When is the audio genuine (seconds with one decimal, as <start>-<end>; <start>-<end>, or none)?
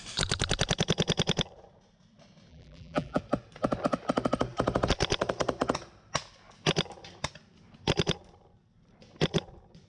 0.0-2.5; 3.2-9.9